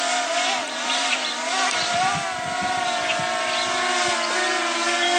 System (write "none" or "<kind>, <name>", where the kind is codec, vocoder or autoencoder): none